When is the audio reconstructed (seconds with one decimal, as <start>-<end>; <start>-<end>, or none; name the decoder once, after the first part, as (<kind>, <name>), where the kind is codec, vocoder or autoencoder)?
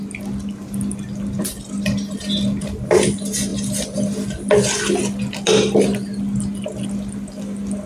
none